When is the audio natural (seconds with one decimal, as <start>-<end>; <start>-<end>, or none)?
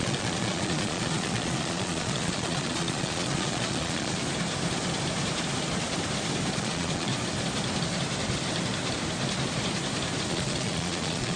4.2-6.6; 7.1-10.3